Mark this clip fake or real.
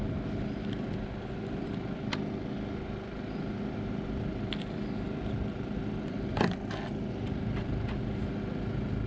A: real